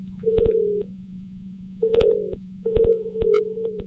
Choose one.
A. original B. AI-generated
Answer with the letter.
B